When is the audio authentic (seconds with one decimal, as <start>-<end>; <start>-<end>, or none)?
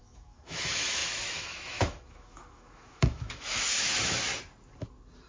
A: 4.3-5.3